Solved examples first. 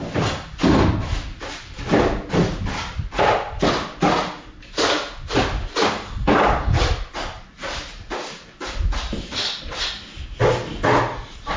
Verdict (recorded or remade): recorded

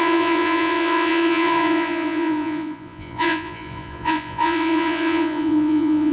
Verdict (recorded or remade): remade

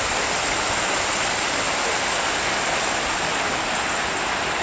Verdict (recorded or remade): recorded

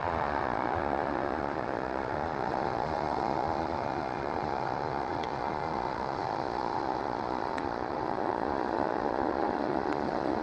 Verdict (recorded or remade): remade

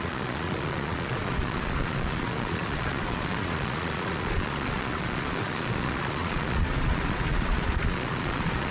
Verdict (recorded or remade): remade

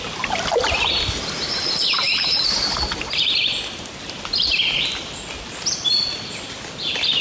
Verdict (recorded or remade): recorded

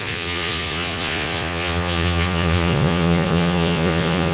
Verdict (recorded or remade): remade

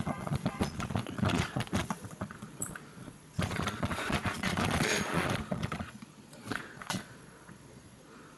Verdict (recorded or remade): remade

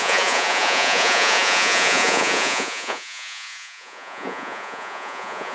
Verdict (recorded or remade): remade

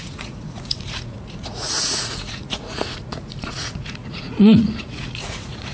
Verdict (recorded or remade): remade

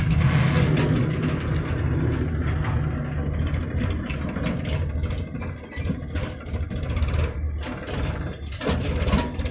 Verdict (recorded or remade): recorded